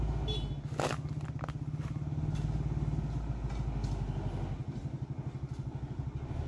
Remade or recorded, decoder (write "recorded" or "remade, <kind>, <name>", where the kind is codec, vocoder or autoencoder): recorded